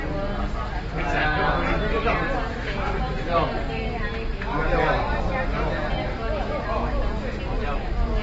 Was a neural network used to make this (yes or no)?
no